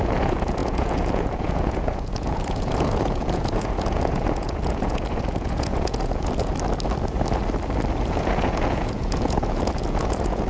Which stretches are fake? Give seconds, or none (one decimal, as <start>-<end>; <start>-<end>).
0.0-6.5; 7.9-10.5